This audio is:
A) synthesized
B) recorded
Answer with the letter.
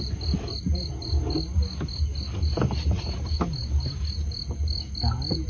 B